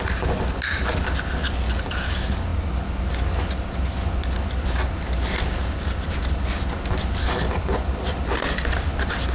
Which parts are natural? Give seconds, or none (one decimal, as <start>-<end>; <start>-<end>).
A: 0.0-9.3